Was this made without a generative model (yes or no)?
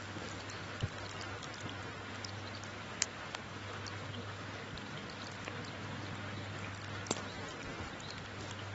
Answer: no